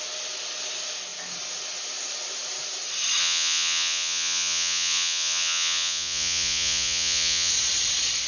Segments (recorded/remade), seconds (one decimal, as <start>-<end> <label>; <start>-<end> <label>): 0.0-3.2 recorded; 3.2-7.5 remade; 7.5-8.3 recorded